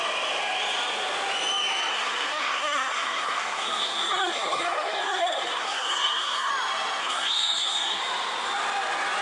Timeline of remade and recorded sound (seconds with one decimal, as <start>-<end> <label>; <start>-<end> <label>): 0.0-1.9 recorded; 1.9-6.5 remade; 6.5-7.0 recorded; 7.0-8.0 remade; 8.0-9.2 recorded